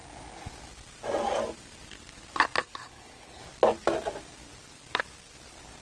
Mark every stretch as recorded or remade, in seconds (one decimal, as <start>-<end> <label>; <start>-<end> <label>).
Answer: 0.0-2.6 recorded; 2.6-3.4 remade; 3.4-5.8 recorded